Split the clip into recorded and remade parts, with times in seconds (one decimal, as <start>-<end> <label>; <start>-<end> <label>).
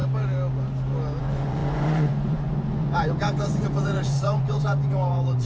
0.0-1.2 recorded; 1.2-5.5 remade